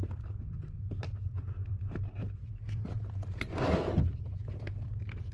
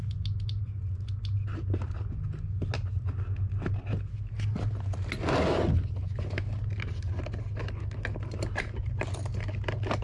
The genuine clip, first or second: second